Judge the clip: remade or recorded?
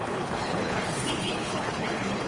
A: remade